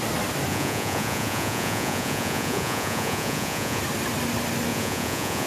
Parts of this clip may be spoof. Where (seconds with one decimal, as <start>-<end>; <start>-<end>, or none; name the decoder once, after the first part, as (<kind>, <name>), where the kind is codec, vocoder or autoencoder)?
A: 0.5-3.8 (vocoder, Vocos); 4.7-5.5